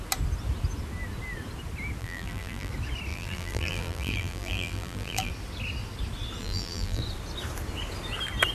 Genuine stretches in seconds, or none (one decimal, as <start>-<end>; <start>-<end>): 0.0-2.0; 2.7-3.1; 5.3-6.4; 7.0-8.5

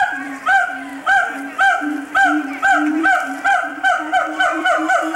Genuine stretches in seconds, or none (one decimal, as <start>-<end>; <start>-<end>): 0.9-2.9

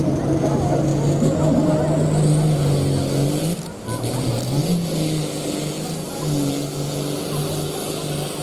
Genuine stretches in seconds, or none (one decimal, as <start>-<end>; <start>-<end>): 0.0-8.4

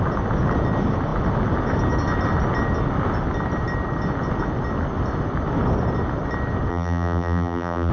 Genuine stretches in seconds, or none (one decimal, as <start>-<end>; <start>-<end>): 0.0-6.7

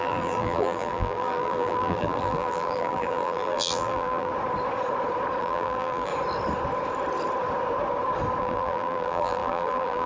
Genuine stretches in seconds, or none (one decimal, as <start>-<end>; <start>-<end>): 4.3-5.4; 6.1-8.4